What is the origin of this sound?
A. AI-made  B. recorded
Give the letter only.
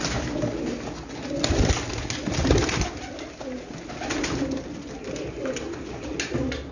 B